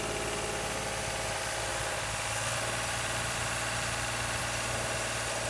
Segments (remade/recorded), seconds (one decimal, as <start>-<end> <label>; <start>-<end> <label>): 0.0-1.7 recorded; 1.7-4.4 remade; 4.4-5.5 recorded